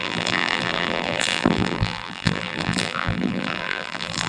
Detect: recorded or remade remade